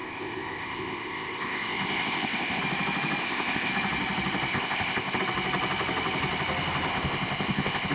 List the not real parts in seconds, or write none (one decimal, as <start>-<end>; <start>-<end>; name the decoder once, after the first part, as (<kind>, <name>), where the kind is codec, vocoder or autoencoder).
0.0-2.6 (codec, ZipCodec); 3.2-3.7; 4.5-5.2; 6.9-7.9